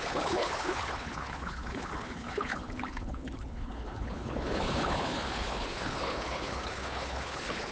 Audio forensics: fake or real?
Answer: fake